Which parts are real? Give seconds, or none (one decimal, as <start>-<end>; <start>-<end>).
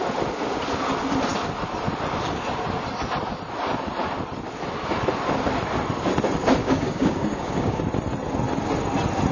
0.0-6.6; 7.8-9.3